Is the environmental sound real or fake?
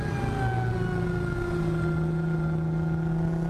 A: real